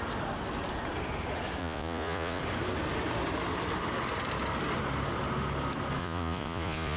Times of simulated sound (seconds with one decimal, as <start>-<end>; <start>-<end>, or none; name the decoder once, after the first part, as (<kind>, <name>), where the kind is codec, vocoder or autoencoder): 1.6-2.4 (vocoder, Vocos); 6.0-7.0